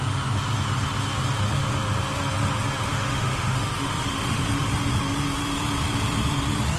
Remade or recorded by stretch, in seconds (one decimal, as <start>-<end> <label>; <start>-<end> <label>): 0.0-2.9 recorded; 2.9-4.4 remade; 4.4-6.8 recorded